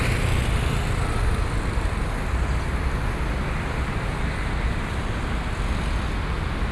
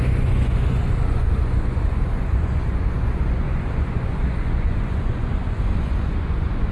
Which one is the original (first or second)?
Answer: first